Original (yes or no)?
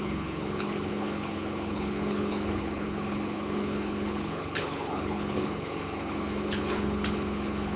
no